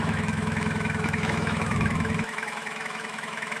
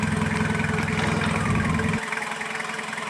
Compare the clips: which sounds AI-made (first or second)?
first